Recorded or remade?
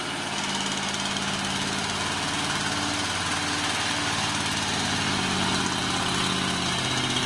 recorded